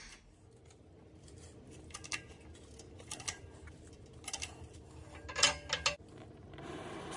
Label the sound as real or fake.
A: real